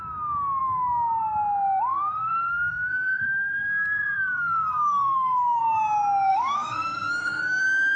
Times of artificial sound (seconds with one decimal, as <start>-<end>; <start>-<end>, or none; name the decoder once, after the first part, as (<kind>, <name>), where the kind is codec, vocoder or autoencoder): 1.9-5.6 (codec, SNAC); 6.3-7.6